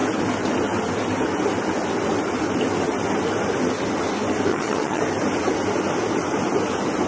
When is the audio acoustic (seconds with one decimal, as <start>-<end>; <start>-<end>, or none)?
0.0-4.5; 5.0-7.1